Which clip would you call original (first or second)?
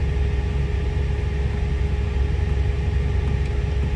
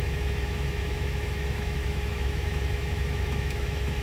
first